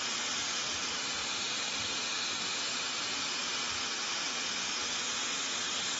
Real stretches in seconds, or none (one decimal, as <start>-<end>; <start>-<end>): 0.0-6.0